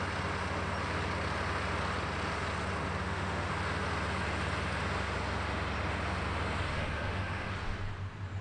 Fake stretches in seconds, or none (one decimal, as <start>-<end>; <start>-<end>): 3.0-3.5; 6.7-7.5